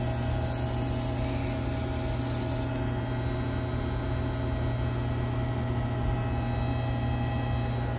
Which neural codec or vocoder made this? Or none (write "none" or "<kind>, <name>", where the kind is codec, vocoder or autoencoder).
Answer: none